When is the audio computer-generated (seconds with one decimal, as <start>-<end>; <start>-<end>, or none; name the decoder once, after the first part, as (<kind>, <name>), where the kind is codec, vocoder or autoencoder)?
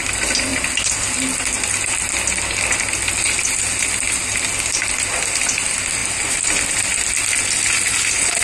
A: none